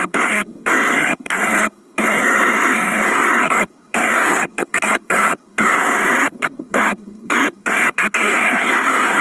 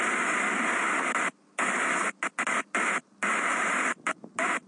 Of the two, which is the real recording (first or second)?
second